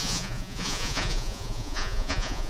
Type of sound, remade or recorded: remade